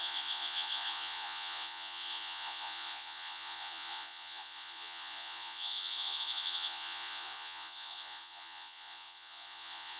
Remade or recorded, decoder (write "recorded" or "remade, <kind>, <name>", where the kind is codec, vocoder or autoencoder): remade, vocoder, Vocos